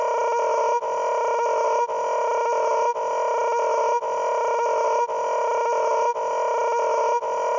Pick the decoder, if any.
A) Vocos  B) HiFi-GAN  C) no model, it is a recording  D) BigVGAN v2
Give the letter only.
C